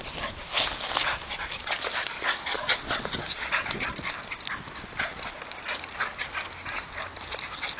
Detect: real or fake real